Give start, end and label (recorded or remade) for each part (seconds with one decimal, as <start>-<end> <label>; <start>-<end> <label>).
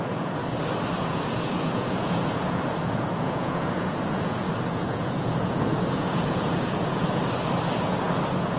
0.0-0.4 remade; 0.4-1.0 recorded; 1.0-7.2 remade; 7.2-7.8 recorded; 7.8-8.6 remade